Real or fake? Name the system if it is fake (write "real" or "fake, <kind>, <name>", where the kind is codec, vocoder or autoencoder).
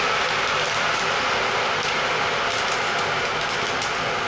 real